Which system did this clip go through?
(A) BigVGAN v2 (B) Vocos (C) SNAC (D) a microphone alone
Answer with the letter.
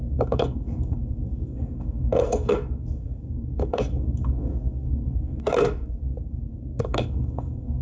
C